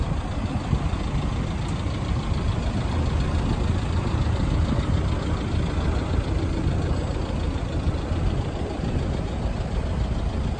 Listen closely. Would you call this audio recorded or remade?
recorded